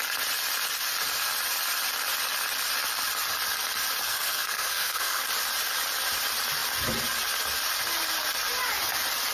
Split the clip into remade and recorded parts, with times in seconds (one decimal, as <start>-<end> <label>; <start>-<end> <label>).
0.0-4.0 recorded; 4.0-5.2 remade; 5.2-9.3 recorded